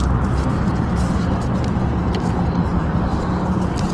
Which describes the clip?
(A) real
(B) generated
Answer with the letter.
A